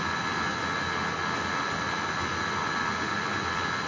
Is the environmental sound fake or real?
real